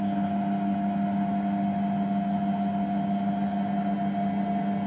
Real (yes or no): yes